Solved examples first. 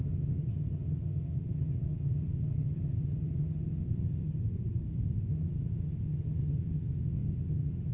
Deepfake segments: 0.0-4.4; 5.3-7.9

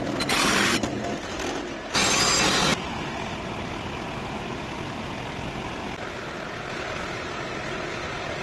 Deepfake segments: none

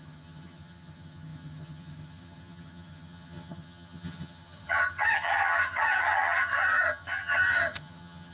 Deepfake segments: 0.0-8.3

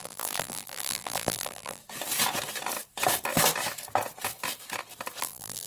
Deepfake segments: 0.0-1.8; 5.2-5.7

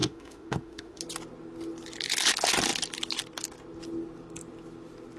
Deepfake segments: 0.0-1.0